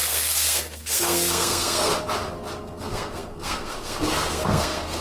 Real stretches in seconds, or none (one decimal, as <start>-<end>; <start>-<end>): 1.9-2.8